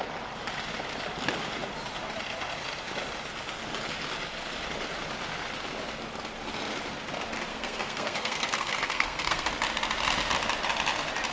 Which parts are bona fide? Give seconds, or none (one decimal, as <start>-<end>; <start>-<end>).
0.0-7.5; 9.5-11.3